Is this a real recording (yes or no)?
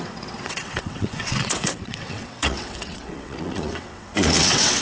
no